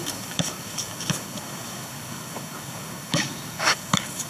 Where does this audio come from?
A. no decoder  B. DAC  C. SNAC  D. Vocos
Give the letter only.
B